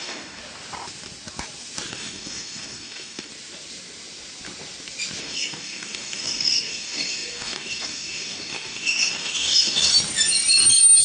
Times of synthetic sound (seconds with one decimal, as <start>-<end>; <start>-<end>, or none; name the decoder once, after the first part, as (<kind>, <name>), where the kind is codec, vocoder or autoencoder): 0.0-0.4 (codec, DAC); 1.9-3.3; 5.2-9.9